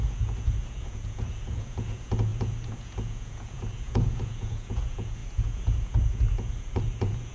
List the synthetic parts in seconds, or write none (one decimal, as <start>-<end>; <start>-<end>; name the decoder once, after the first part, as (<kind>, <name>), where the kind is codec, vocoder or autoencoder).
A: 0.0-7.3 (vocoder, Vocos)